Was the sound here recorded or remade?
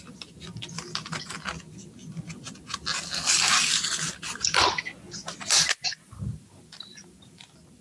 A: recorded